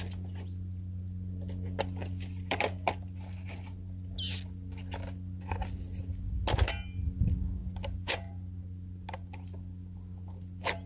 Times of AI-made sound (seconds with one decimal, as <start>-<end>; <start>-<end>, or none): none